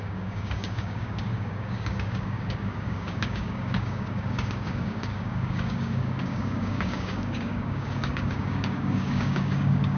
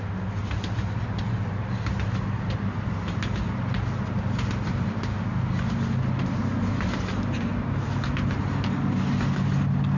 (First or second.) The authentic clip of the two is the second